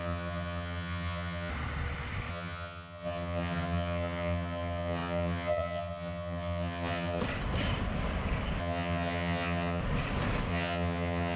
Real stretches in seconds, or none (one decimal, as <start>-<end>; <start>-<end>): 1.5-2.3; 7.2-8.6; 9.8-10.5